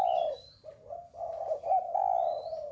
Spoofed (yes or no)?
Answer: no